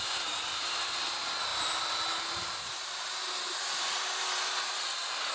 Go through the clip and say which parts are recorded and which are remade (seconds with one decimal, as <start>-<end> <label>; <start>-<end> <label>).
0.0-5.3 recorded